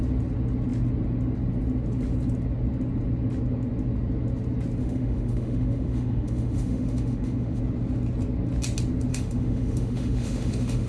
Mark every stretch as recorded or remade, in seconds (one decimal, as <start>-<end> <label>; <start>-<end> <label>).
0.0-4.8 recorded; 4.8-7.6 remade; 7.6-9.1 recorded; 9.1-10.9 remade